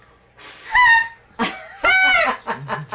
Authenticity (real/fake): real